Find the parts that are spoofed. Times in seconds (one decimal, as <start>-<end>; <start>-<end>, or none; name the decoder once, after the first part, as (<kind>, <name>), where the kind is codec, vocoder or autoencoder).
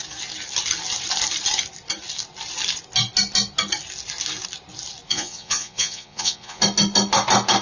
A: 5.1-6.6 (vocoder, Vocos)